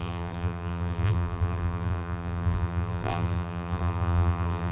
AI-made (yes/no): yes